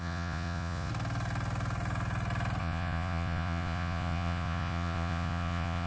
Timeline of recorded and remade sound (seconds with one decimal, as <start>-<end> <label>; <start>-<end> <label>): 0.0-0.9 remade; 0.9-2.6 recorded; 2.6-5.9 remade